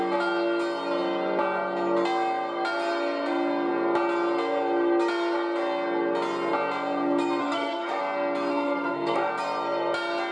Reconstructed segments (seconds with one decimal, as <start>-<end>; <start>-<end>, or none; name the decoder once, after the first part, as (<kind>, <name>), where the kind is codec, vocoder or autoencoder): 7.4-8.0 (codec, SNAC); 8.5-9.3